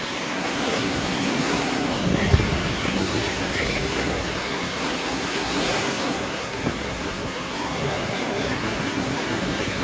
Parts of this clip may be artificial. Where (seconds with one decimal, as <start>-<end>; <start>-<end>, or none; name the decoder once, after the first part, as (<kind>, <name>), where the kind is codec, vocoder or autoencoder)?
0.0-9.8 (codec, SNAC)